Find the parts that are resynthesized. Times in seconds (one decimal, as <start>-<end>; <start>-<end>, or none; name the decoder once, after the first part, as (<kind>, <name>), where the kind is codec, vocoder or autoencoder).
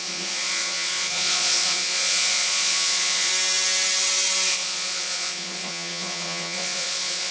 0.0-3.3 (vocoder, Vocos); 4.5-7.3